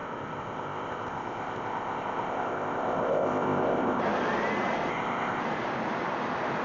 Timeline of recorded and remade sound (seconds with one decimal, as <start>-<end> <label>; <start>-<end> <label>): 0.0-4.0 remade; 4.0-4.9 recorded; 4.9-5.4 remade; 5.4-6.6 recorded